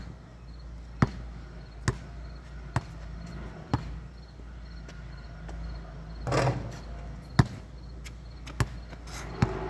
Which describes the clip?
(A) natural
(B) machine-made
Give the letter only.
A